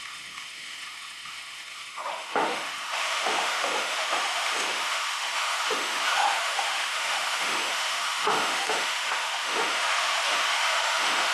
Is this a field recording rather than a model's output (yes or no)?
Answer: no